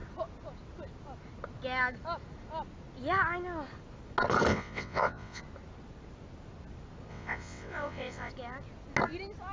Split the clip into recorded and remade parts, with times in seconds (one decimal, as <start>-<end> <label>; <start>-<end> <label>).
0.0-4.5 recorded; 4.5-5.4 remade; 5.4-7.1 recorded; 7.1-8.3 remade; 8.3-9.5 recorded